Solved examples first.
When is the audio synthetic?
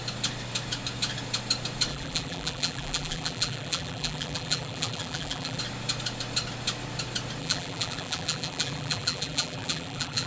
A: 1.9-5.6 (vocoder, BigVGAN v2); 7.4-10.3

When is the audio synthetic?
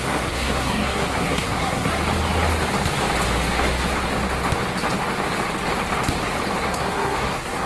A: 0.0-2.0 (codec, SNAC); 6.6-7.7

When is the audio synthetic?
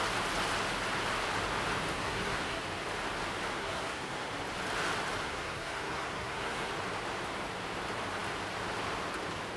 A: 1.9-2.6 (codec, SNAC); 3.5-4.3; 5.2-6.7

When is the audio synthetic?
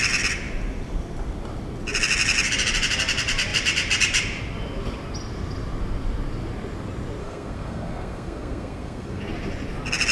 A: 7.2-9.2 (codec, SNAC)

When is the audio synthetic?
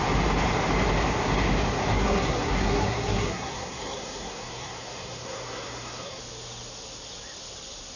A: 1.9-6.2 (codec, SNAC)